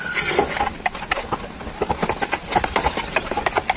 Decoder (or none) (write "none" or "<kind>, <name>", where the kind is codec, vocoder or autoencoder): none